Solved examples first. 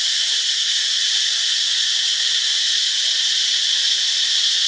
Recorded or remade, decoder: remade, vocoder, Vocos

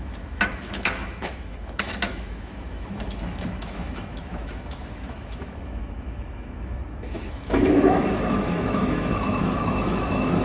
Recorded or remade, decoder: remade, autoencoder, DAC-VAE